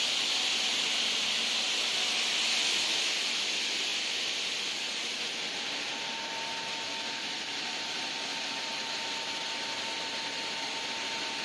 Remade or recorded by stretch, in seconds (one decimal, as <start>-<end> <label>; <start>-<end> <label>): 0.0-3.9 recorded; 3.9-4.7 remade; 4.7-11.4 recorded